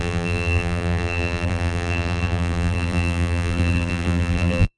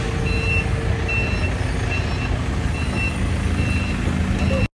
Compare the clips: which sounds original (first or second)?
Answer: second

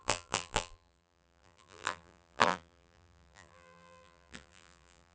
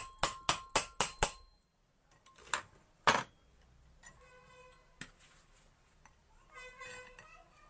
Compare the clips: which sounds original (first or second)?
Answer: second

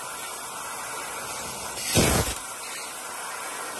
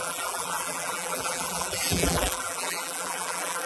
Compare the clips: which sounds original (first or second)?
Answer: first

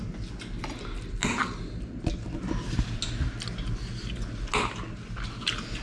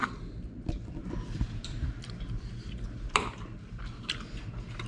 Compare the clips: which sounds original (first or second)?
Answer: first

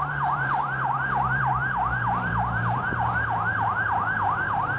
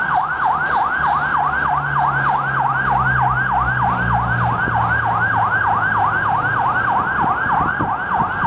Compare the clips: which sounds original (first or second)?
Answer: second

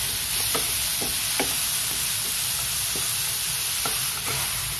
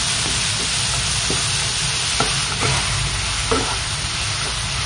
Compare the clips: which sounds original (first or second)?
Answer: second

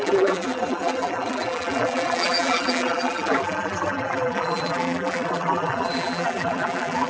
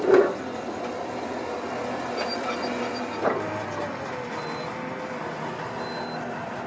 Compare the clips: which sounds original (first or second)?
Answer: second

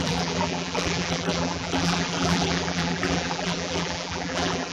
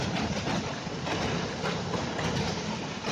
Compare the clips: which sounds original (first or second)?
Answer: second